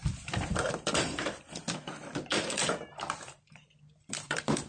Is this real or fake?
fake